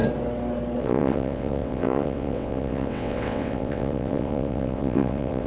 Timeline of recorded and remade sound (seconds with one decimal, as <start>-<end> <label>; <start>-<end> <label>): 0.0-0.8 recorded; 0.8-5.5 remade